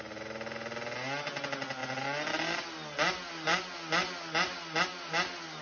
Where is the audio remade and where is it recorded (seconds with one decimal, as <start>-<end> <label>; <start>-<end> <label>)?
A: 0.0-5.6 recorded